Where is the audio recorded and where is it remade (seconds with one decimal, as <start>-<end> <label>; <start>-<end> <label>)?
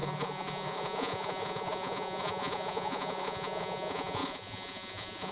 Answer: 0.0-5.3 remade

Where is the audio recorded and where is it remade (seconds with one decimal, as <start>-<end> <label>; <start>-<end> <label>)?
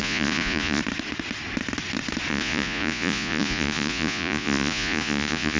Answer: 0.0-0.8 remade; 0.8-2.3 recorded; 2.3-5.6 remade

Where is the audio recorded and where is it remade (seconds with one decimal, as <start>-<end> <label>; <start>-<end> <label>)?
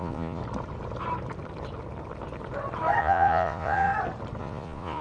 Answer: 0.0-0.4 remade; 0.4-3.0 recorded; 3.0-3.9 remade; 3.9-4.4 recorded; 4.4-5.0 remade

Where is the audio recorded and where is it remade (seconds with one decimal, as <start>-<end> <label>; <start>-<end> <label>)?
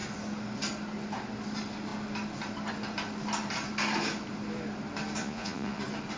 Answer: 0.0-5.2 recorded; 5.2-5.8 remade; 5.8-6.2 recorded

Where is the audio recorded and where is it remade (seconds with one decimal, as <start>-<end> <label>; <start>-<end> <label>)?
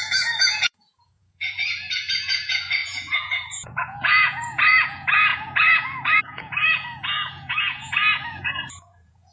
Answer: 0.0-9.3 remade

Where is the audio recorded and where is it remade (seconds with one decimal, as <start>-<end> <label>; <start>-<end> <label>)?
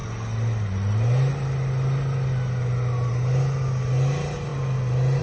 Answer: 0.0-5.2 recorded